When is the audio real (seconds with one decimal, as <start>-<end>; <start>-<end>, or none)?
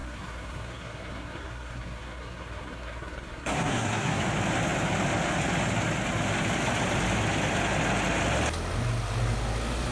4.2-9.9